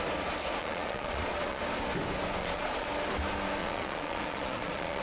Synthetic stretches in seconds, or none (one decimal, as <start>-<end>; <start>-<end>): 0.6-1.6; 2.4-2.9; 3.6-5.0